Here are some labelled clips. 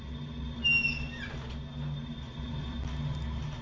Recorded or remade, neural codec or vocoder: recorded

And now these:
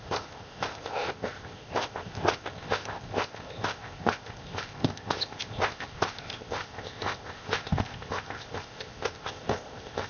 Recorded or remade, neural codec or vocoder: remade, codec, ZipCodec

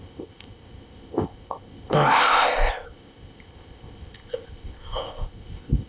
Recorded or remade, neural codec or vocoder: remade, codec, ZipCodec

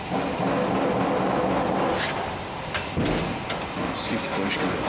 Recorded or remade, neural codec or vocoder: recorded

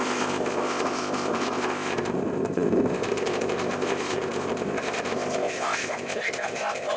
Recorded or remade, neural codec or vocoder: remade, codec, ZipCodec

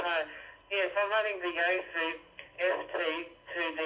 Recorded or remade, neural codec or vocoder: recorded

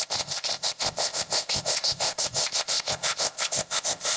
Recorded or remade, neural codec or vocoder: remade, codec, ZipCodec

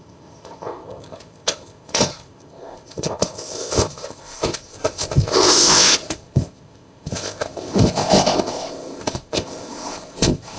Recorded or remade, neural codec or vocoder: remade, codec, ZipCodec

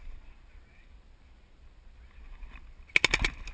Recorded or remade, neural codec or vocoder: recorded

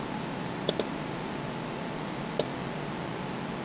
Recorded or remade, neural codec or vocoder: recorded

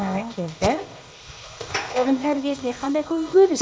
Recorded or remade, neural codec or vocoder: remade, codec, ZipCodec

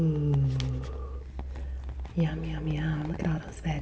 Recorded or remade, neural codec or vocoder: recorded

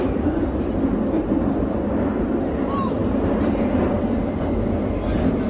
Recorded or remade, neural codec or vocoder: recorded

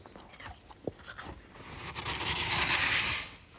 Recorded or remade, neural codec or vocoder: recorded